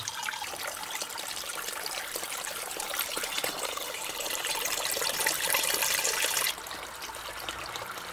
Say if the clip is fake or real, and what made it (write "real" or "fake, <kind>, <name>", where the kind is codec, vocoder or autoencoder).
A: fake, vocoder, BigVGAN v2